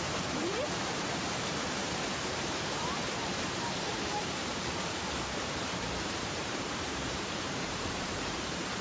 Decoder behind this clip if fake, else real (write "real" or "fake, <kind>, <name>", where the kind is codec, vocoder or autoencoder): fake, vocoder, BigVGAN v2